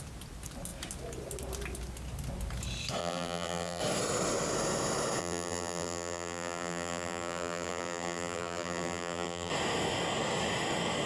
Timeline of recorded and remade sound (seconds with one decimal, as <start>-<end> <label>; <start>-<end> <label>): 0.0-3.0 recorded; 3.0-3.8 remade; 3.8-5.2 recorded; 5.2-9.5 remade; 9.5-11.1 recorded